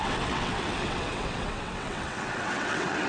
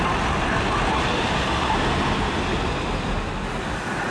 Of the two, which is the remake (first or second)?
first